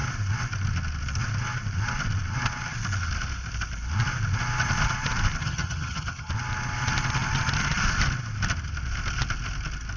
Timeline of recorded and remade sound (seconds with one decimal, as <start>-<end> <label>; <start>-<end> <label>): 0.0-5.4 recorded; 5.4-6.3 remade; 6.3-10.0 recorded